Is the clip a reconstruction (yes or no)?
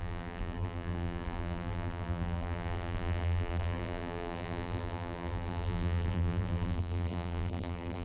yes